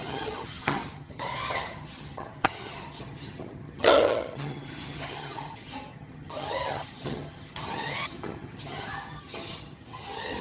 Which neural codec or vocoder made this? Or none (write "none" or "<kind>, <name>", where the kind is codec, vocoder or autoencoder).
vocoder, HiFi-GAN